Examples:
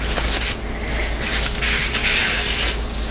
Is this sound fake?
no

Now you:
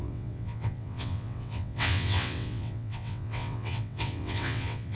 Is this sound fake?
yes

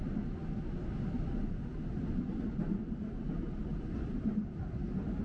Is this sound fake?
no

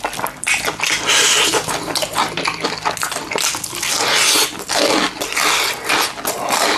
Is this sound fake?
no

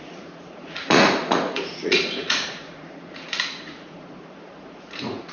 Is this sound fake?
yes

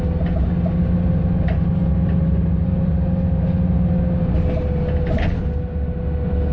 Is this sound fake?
no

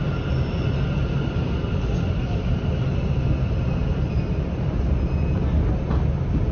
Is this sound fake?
no